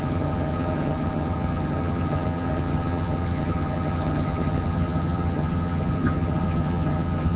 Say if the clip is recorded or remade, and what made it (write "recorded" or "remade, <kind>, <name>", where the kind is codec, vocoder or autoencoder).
remade, vocoder, HiFi-GAN